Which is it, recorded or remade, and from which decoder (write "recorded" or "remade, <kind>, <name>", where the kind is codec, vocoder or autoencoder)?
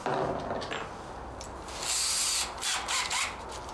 recorded